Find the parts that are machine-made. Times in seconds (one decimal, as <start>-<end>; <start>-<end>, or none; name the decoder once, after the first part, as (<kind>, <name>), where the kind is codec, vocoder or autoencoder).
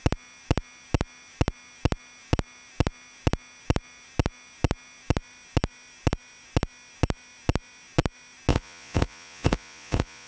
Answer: 8.5-10.3 (vocoder, Vocos)